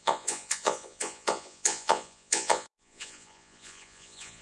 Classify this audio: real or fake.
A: fake